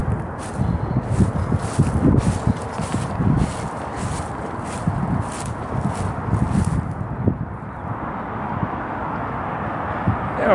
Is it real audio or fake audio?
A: real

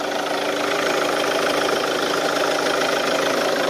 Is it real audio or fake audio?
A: fake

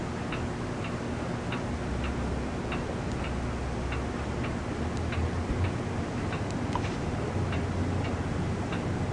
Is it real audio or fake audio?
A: real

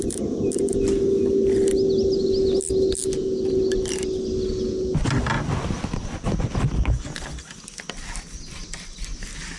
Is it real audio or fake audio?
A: real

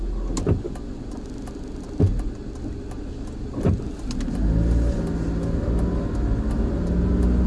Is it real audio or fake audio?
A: real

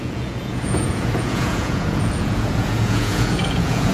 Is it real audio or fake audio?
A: fake